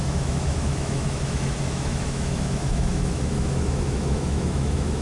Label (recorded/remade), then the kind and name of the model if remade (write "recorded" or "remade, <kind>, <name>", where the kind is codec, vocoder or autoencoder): remade, autoencoder, DAC-VAE